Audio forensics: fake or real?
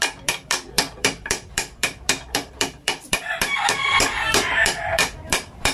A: fake